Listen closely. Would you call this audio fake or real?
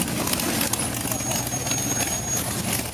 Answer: real